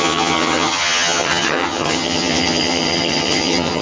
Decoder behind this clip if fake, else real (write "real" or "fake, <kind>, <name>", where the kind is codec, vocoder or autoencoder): fake, vocoder, HiFi-GAN